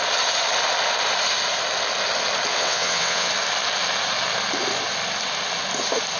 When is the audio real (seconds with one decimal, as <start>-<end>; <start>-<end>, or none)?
0.0-2.5; 3.3-6.2